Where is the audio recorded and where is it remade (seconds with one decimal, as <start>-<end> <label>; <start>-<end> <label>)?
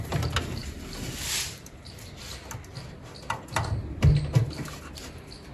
0.0-0.6 recorded; 0.6-2.2 remade; 2.2-5.5 recorded